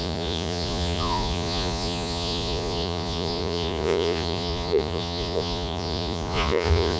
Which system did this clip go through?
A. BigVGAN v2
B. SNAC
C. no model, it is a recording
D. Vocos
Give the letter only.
D